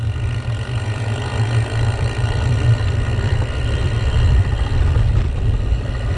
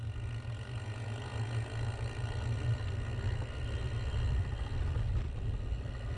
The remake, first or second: first